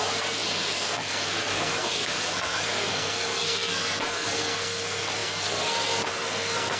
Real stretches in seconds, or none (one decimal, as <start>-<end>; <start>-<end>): none